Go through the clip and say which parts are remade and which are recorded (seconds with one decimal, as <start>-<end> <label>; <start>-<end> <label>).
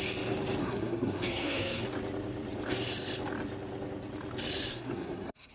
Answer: 0.0-0.6 recorded; 0.6-1.8 remade; 1.8-4.7 recorded; 4.7-5.5 remade